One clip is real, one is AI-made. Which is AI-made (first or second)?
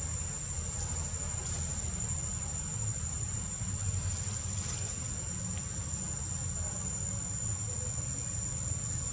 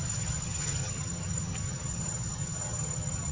second